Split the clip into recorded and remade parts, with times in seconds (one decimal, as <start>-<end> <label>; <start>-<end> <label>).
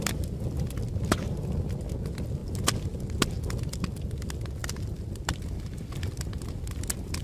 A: 0.0-7.2 recorded